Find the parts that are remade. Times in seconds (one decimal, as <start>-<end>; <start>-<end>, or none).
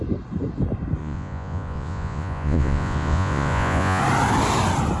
1.0-4.0